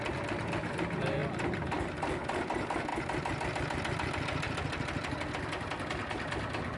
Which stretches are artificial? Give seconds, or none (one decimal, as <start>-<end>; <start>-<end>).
1.2-2.5

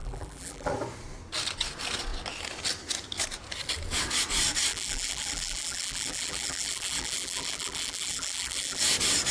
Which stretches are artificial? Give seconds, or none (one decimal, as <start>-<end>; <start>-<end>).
0.0-0.7; 4.7-8.8